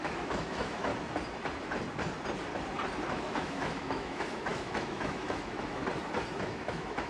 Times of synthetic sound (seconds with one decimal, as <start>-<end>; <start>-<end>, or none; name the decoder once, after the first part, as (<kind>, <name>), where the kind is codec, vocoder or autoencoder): 0.0-0.9 (autoencoder, DAC-VAE); 3.1-5.8; 6.4-7.1